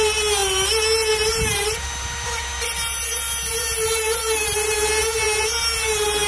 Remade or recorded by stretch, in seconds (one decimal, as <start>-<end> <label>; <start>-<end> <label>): 0.0-2.5 remade; 2.5-3.5 recorded; 3.5-6.3 remade